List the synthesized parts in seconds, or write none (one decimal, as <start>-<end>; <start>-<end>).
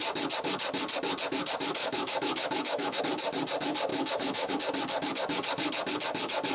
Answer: 1.8-3.0; 3.9-4.5